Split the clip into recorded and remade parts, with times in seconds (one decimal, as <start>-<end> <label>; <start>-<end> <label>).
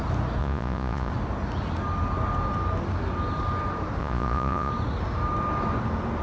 0.0-0.4 recorded; 0.4-1.1 remade; 1.1-4.0 recorded; 4.0-4.7 remade; 4.7-6.2 recorded